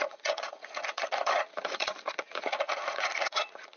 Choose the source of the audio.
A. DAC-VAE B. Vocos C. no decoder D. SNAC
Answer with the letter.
B